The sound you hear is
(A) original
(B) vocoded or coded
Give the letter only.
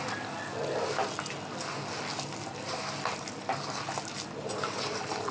A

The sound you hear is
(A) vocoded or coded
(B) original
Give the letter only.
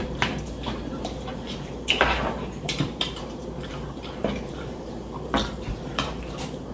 A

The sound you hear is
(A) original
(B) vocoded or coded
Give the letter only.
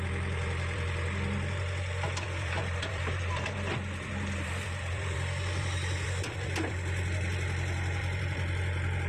B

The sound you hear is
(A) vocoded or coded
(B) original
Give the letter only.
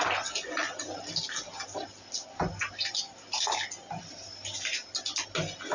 B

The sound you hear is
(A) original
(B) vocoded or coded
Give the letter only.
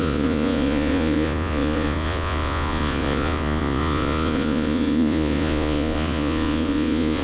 B